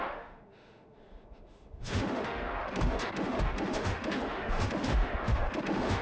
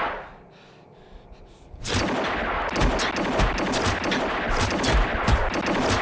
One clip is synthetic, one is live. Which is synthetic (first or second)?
first